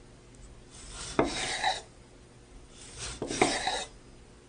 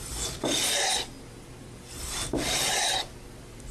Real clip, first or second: first